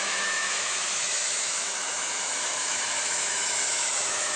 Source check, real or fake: fake